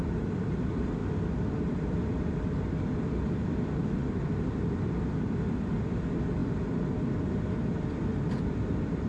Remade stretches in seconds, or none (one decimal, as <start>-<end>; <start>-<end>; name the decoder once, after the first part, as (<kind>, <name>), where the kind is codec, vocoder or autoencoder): 0.0-1.0 (vocoder, BigVGAN v2); 1.7-9.1